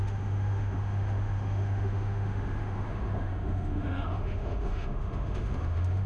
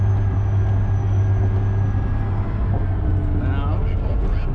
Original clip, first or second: second